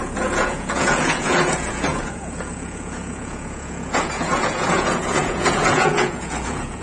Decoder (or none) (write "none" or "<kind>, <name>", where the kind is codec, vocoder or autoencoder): vocoder, Vocos